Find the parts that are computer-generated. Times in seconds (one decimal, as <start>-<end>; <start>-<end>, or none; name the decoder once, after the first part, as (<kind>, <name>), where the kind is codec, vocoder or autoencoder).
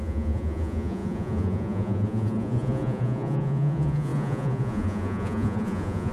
0.0-6.1 (vocoder, Vocos)